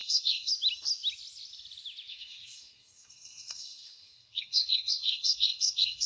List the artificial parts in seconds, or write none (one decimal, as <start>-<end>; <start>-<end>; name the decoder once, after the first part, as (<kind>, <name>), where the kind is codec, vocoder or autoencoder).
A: 0.0-0.5 (codec, SNAC); 2.1-6.1